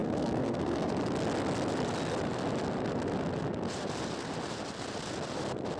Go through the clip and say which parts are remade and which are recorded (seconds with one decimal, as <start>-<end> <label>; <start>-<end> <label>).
0.0-0.9 remade; 0.9-5.8 recorded